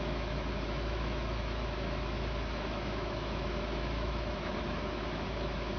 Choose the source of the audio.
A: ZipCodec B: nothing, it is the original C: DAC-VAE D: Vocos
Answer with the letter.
C